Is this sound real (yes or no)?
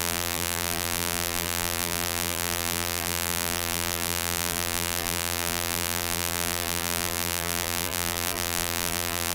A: no